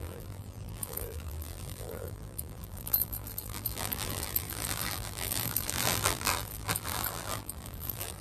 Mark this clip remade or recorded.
remade